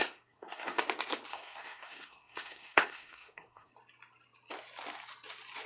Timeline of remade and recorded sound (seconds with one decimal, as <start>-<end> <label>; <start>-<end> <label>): 0.0-0.8 remade; 0.8-1.3 recorded; 1.3-3.7 remade; 3.7-5.7 recorded